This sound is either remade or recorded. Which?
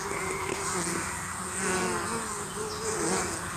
recorded